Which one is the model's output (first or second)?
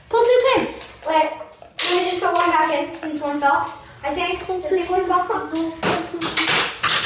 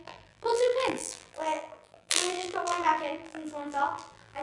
second